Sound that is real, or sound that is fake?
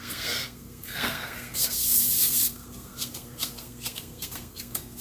fake